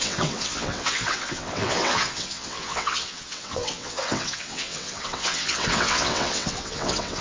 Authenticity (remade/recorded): remade